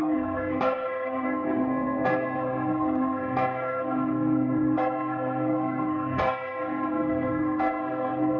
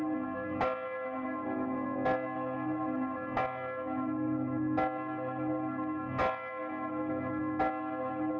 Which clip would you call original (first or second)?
second